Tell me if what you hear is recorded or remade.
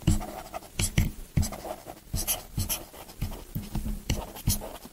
remade